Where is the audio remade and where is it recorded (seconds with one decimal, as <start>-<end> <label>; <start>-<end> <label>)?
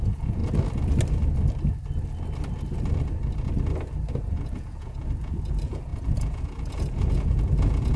0.0-0.4 remade; 0.4-4.2 recorded; 4.2-8.0 remade